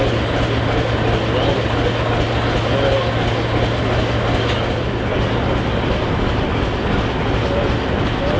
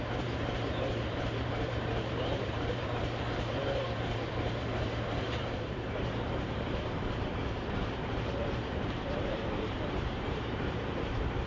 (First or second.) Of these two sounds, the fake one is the second